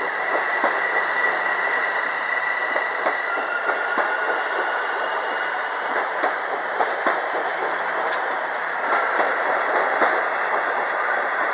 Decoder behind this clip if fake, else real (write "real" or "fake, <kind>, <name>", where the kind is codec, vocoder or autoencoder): fake, vocoder, BigVGAN v2